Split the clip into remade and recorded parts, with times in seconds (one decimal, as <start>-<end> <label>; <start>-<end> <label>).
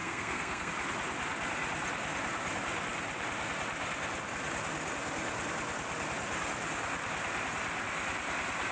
0.0-0.7 remade; 0.7-8.7 recorded